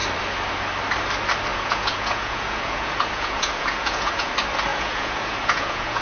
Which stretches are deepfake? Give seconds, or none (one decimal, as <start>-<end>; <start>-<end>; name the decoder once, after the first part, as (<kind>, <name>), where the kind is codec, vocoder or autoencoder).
1.5-4.3 (vocoder, Vocos); 4.7-6.0